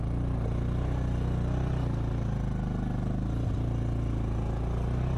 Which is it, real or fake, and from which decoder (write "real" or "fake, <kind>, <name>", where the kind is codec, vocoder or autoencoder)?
real